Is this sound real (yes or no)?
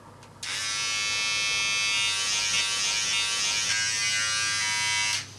yes